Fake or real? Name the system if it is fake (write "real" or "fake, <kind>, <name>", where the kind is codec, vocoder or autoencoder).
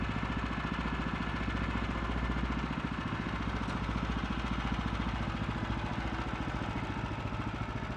real